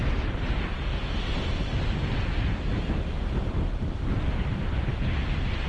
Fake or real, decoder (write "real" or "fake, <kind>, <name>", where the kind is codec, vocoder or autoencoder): real